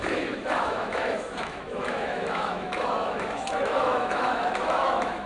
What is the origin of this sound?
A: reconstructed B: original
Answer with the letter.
A